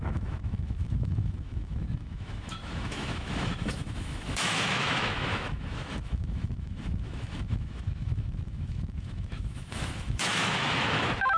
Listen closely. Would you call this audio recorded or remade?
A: remade